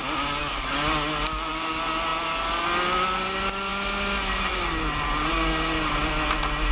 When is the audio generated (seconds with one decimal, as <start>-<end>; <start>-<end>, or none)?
none